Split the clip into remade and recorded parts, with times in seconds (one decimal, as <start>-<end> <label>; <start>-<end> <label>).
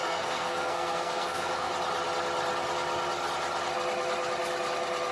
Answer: 0.0-1.7 remade; 1.7-5.1 recorded